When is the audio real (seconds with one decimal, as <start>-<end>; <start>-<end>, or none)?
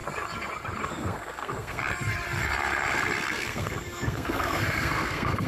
0.0-0.9; 1.8-3.3